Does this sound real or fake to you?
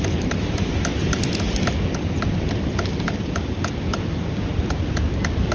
real